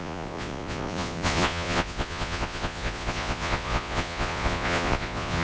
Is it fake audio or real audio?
fake